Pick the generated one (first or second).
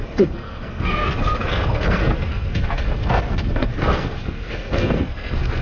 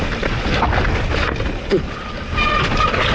first